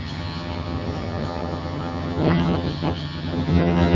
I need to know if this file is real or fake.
fake